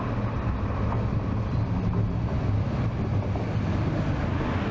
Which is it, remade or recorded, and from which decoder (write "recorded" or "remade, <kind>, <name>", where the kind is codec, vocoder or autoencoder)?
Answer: recorded